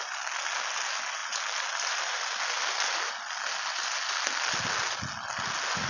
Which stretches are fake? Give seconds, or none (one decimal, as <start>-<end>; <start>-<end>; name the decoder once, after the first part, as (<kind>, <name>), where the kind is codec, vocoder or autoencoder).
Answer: none